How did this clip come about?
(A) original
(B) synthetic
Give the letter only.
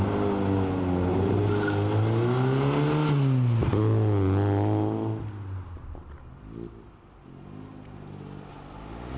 A